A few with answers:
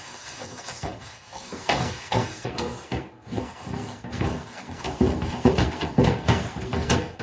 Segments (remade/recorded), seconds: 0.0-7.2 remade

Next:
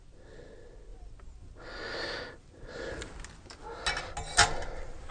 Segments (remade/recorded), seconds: 0.0-5.1 recorded